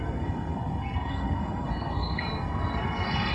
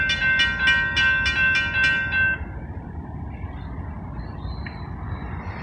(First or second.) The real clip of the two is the second